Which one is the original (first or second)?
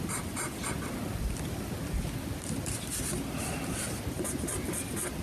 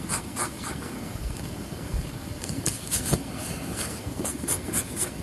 first